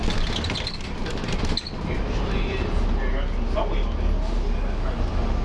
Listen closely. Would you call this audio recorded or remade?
recorded